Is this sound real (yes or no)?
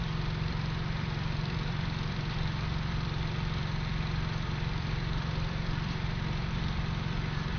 no